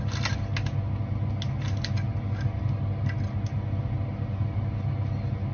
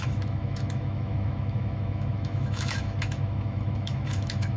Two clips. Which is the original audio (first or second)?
first